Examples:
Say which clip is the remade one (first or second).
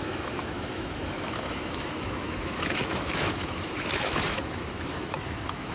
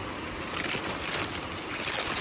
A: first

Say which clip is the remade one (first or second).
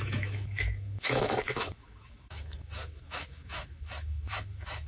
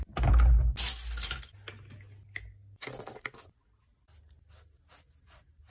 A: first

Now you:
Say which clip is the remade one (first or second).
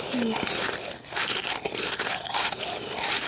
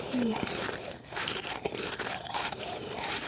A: second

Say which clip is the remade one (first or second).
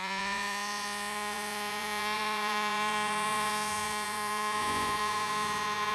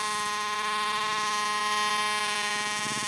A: first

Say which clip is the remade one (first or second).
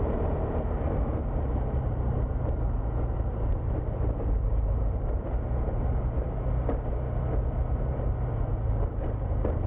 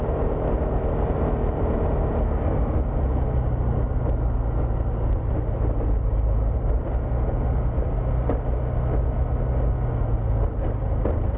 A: first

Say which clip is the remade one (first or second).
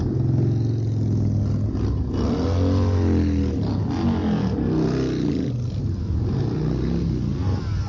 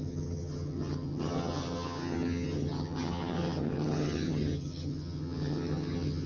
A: second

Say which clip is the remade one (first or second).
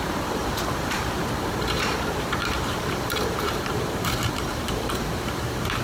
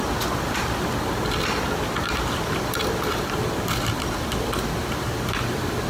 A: first